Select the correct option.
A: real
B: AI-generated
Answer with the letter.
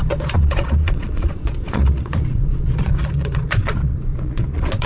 B